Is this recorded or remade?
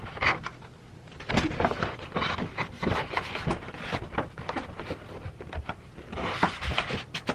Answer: recorded